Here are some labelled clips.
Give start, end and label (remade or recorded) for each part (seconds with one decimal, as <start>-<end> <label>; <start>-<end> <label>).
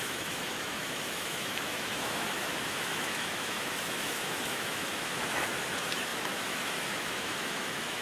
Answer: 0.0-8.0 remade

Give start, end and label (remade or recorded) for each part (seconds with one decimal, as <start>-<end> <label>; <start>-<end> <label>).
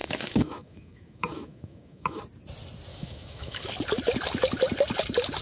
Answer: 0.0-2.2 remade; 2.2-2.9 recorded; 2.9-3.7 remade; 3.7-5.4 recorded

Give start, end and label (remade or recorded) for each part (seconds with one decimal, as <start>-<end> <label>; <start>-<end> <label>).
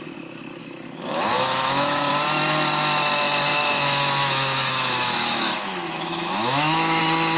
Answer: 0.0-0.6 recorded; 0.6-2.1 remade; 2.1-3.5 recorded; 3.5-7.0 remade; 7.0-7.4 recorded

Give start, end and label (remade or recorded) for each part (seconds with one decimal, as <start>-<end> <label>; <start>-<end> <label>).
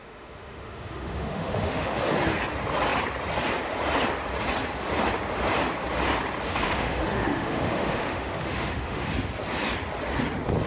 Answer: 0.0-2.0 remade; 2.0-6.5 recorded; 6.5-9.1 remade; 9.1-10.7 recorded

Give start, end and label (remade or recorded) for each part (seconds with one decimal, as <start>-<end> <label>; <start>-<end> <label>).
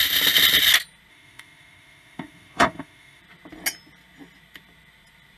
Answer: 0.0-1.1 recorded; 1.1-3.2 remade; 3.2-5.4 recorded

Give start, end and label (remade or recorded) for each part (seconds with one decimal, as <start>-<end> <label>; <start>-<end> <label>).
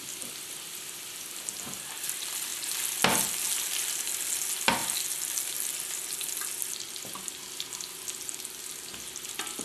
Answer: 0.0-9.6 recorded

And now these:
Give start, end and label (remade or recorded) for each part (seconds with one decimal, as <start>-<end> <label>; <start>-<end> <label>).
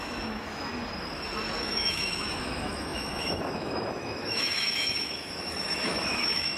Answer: 0.0-0.7 remade; 0.7-1.6 recorded; 1.6-6.6 remade